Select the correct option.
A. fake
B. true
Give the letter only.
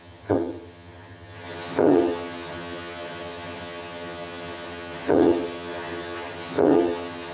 A